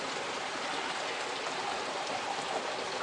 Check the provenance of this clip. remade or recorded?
recorded